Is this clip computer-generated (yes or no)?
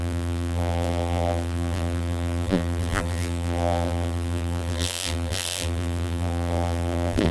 yes